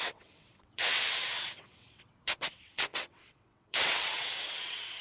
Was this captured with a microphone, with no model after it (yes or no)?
no